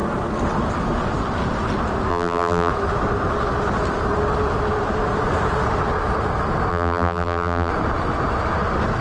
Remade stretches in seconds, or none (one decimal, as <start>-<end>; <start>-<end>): 2.1-2.7; 6.7-7.7